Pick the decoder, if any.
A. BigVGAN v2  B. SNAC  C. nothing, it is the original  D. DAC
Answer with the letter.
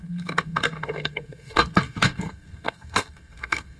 B